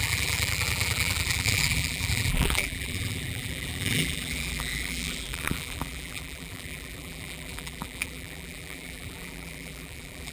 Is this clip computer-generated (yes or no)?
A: yes